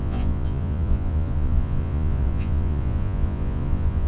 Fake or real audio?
fake